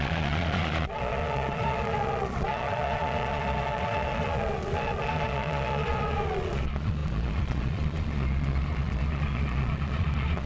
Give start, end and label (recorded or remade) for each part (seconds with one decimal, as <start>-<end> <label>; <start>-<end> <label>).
0.0-10.5 remade